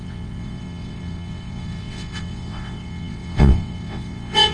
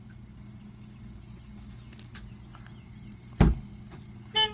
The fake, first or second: first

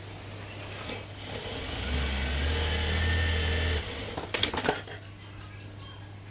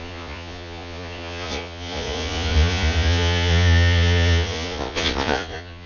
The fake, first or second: second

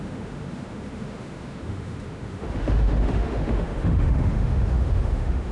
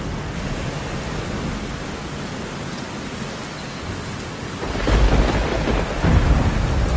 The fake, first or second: first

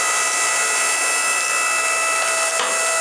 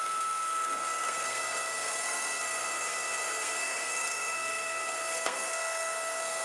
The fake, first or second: second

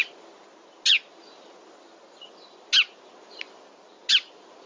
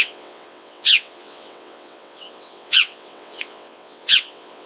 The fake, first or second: second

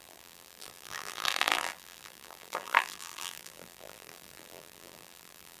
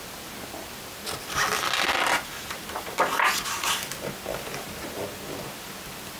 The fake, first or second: first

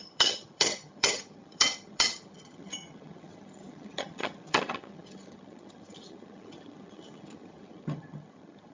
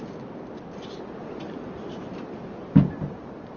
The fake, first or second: first